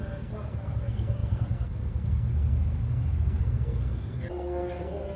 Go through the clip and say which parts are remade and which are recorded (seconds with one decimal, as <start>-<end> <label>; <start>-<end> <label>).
0.0-5.2 remade